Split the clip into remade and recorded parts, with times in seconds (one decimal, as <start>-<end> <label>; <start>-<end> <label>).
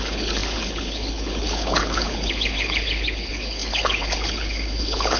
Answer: 0.0-5.2 remade